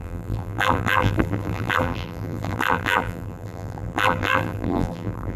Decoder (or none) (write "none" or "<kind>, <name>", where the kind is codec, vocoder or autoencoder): vocoder, BigVGAN v2